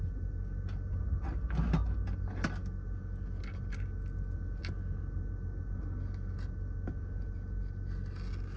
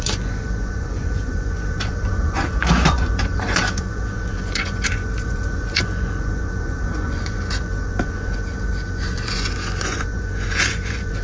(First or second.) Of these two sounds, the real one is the first